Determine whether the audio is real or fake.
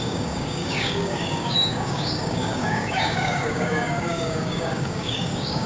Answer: fake